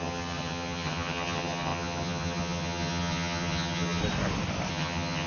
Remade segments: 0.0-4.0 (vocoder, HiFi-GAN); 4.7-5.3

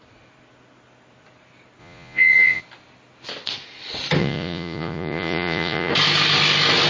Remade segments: 1.8-2.6 (vocoder, Vocos); 4.2-5.9

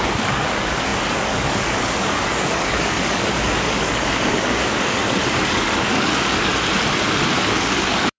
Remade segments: 0.0-6.5 (codec, DAC); 7.4-8.2

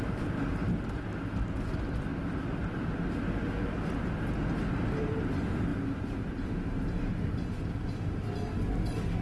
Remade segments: 2.1-2.9 (vocoder, BigVGAN v2); 5.7-8.1